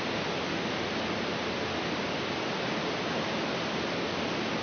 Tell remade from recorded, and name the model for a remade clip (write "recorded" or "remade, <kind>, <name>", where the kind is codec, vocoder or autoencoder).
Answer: recorded